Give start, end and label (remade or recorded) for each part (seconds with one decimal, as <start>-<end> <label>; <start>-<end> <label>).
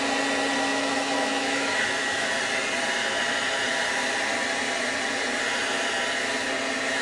0.0-0.7 recorded; 0.7-2.3 remade; 2.3-7.0 recorded